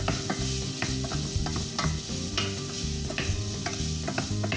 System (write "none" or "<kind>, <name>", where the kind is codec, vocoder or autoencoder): none